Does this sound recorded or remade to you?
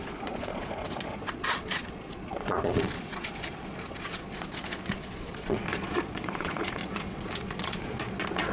remade